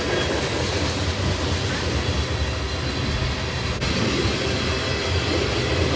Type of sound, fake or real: real